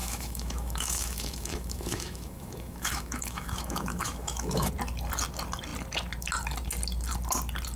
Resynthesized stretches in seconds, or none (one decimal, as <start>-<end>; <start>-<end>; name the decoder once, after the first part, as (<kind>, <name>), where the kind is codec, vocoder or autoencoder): 0.0-4.7 (autoencoder, DAC-VAE)